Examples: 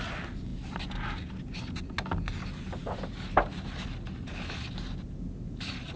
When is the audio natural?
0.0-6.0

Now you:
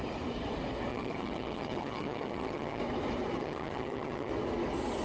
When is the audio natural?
0.0-0.9; 2.8-3.4; 4.3-5.0

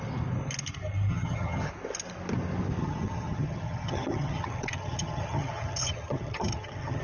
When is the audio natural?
0.0-1.1; 1.7-2.8

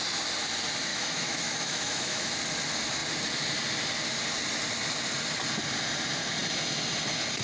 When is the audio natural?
0.0-0.9; 2.3-7.4

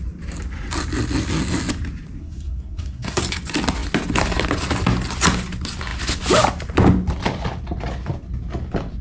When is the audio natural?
0.0-2.2; 3.2-9.0

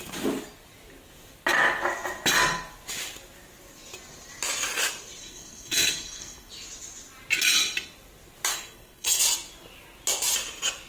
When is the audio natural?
0.0-5.2; 6.5-8.5; 9.2-10.9